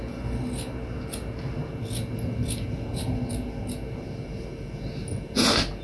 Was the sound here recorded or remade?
recorded